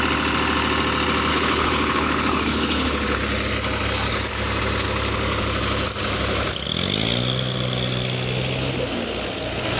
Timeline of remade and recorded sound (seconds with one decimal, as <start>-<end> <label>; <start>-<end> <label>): 0.0-1.3 recorded; 1.3-3.2 remade; 3.2-9.8 recorded